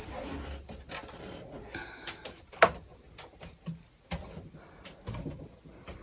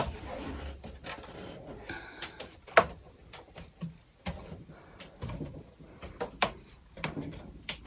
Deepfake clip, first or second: second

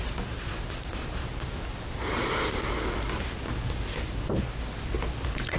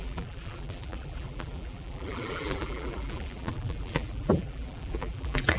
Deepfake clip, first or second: second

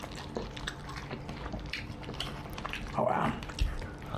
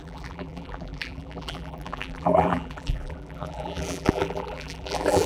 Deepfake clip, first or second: second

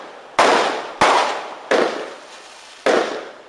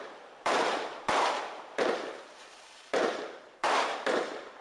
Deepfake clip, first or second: second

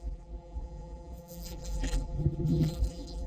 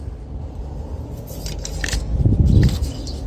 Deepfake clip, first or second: first